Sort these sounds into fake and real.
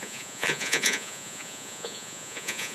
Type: fake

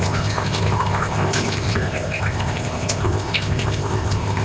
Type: fake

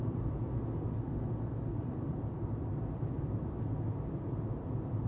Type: fake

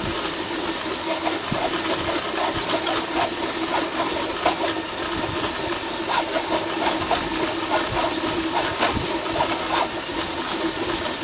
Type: real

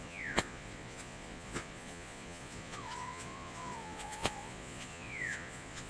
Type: fake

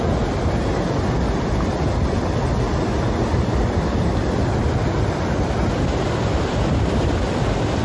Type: real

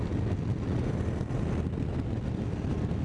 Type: real